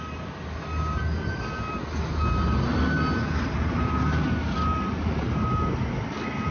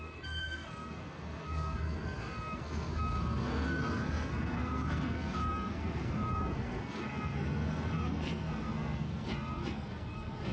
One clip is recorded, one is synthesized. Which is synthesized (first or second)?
second